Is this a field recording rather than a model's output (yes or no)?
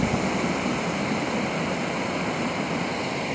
yes